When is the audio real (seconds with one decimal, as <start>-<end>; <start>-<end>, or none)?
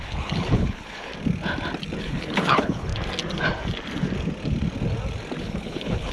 1.1-2.0; 2.9-5.4